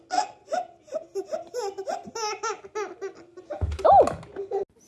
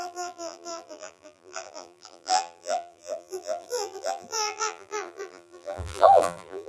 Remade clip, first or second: second